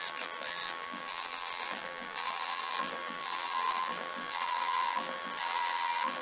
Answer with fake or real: fake